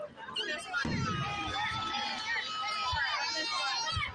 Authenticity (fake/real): real